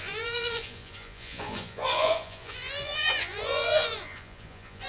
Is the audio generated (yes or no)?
yes